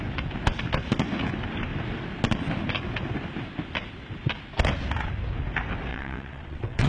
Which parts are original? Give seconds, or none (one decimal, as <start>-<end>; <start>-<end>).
0.0-5.9